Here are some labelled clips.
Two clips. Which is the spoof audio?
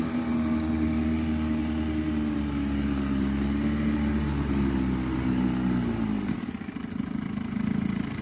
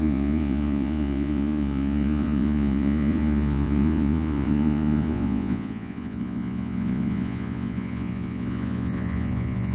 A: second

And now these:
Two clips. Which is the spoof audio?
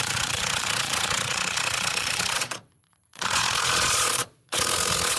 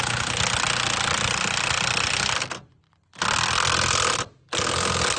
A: first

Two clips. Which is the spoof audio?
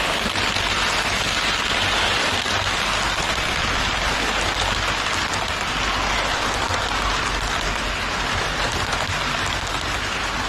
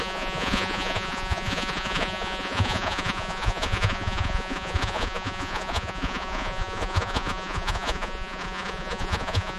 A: second